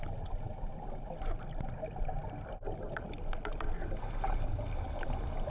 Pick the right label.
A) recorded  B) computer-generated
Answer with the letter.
A